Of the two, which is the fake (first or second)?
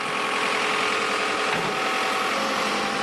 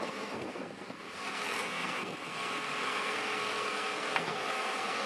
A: second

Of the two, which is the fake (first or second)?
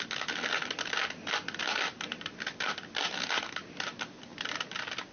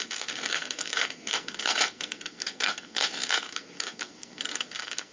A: second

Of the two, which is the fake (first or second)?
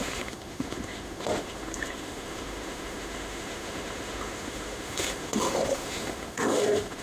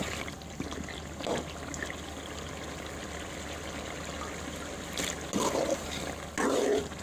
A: first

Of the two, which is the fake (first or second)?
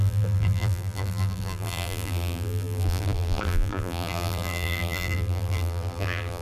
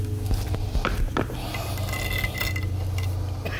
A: first